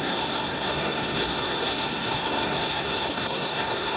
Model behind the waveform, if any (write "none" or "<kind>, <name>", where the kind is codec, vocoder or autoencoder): codec, SNAC